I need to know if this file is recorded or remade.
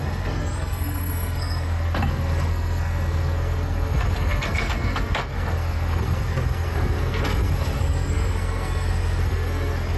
remade